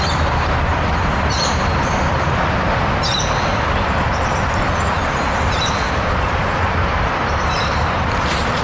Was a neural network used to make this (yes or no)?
yes